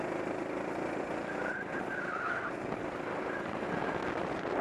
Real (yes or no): yes